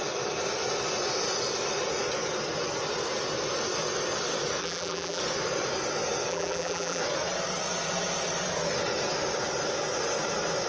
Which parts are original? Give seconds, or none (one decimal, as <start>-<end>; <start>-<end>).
0.0-4.6; 5.2-6.3; 7.0-10.7